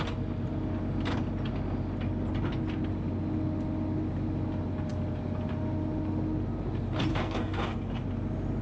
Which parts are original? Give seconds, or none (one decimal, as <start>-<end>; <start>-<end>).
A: 0.0-7.1; 7.9-8.6